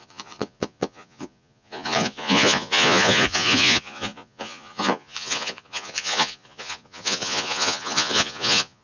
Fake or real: fake